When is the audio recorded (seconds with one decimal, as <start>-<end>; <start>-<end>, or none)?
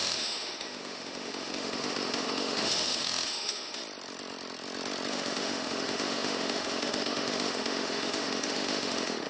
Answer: 3.8-5.1